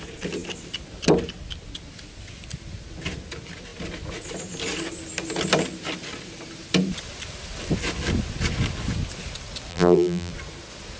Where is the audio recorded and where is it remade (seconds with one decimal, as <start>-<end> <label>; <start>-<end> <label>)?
0.0-9.7 recorded; 9.7-10.3 remade; 10.3-11.0 recorded